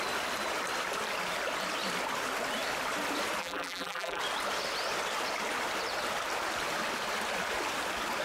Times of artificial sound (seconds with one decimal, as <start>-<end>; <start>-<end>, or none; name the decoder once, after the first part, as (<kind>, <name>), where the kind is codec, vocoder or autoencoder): 3.4-4.2 (vocoder, BigVGAN v2)